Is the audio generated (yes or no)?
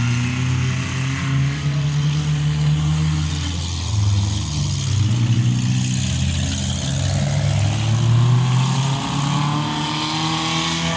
no